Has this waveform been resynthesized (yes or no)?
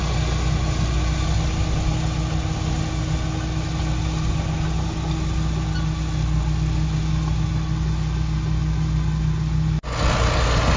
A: no